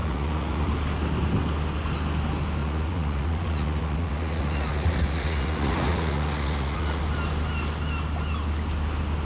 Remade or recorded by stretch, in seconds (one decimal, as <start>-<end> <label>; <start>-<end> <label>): 0.0-0.7 remade; 0.7-2.6 recorded; 2.6-7.0 remade; 7.0-9.2 recorded